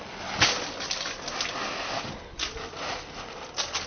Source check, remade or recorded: recorded